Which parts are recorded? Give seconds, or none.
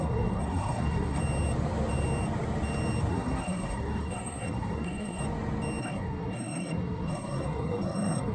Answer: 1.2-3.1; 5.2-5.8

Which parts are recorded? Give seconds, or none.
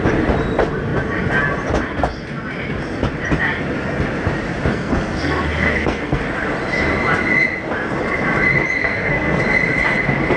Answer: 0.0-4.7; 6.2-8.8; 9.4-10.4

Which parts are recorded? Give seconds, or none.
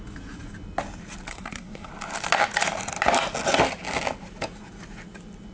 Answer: 0.0-1.3; 1.9-5.5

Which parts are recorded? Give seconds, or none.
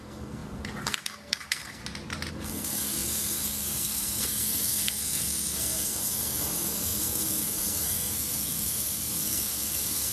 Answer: 1.8-2.3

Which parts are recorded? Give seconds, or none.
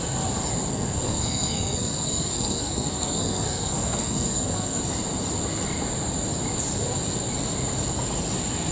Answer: 0.0-0.7; 4.8-8.7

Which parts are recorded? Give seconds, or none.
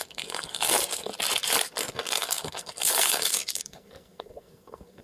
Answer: 1.1-1.8